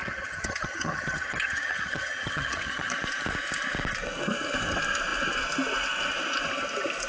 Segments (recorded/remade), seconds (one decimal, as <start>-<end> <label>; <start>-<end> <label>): 0.0-2.9 remade; 2.9-7.1 recorded